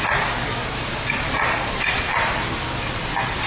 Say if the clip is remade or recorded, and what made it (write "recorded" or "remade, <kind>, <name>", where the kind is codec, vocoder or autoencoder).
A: remade, vocoder, BigVGAN v2